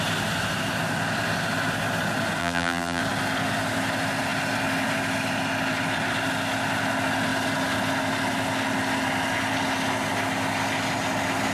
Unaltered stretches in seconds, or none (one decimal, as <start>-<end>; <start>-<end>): 0.0-2.4; 3.0-11.5